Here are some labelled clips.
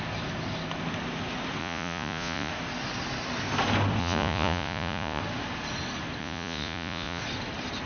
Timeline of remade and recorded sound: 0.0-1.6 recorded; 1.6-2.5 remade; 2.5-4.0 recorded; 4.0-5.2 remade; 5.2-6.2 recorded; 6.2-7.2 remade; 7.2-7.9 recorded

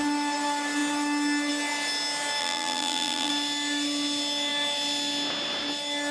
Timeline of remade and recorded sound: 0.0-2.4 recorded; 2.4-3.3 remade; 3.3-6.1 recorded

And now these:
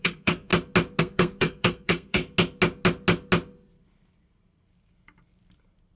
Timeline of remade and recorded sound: 0.0-0.5 remade; 0.5-1.0 recorded; 1.0-2.2 remade; 2.2-6.0 recorded

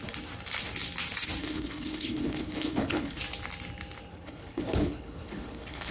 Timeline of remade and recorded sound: 0.0-1.4 recorded; 1.4-3.2 remade; 3.2-4.1 recorded; 4.1-5.9 remade